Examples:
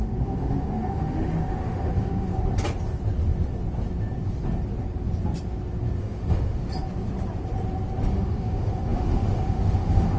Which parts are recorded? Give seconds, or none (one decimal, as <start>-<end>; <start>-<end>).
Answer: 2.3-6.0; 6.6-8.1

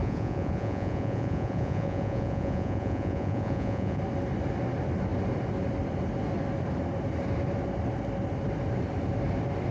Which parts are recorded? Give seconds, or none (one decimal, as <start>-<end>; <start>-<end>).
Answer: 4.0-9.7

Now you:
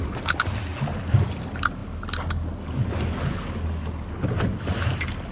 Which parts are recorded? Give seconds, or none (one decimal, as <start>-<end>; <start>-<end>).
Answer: 0.0-5.3

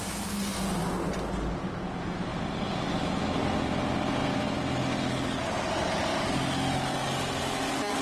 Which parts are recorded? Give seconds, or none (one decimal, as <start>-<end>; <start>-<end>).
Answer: 0.0-8.0